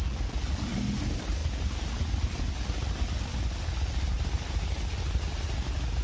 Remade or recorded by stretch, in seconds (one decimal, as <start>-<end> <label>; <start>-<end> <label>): 0.0-6.0 recorded